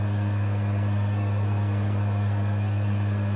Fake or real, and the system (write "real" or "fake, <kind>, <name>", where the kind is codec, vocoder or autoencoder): fake, codec, SNAC